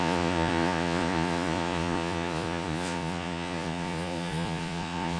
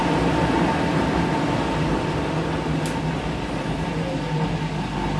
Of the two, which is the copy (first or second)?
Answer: first